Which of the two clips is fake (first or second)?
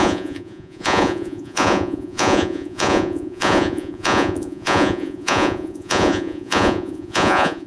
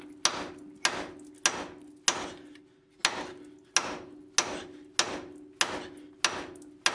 first